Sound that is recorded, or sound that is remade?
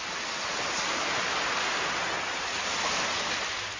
recorded